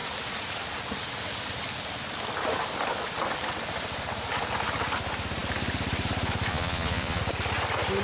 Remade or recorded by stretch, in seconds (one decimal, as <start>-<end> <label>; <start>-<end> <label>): 0.0-6.5 recorded; 6.5-7.2 remade; 7.2-8.0 recorded

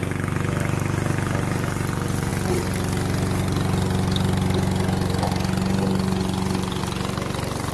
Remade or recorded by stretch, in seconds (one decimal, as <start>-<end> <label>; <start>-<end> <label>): 0.0-7.7 recorded

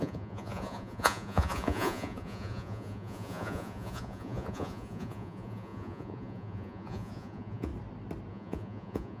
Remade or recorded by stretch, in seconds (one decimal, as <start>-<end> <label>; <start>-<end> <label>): 0.0-7.7 remade; 7.7-8.3 recorded; 8.3-9.2 remade

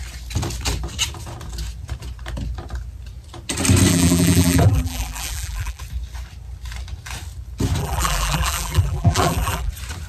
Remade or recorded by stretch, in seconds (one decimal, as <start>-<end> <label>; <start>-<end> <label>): 0.0-3.9 recorded; 3.9-5.8 remade; 5.8-7.8 recorded; 7.8-9.7 remade; 9.7-10.1 recorded